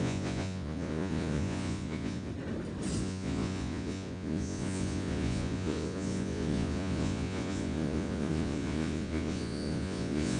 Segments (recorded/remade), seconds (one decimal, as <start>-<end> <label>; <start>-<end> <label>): 0.0-2.3 remade; 2.3-3.0 recorded; 3.0-10.4 remade